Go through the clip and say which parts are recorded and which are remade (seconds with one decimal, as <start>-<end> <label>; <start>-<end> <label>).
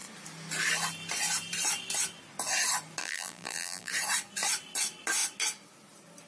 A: 0.0-3.0 recorded; 3.0-3.9 remade; 3.9-6.3 recorded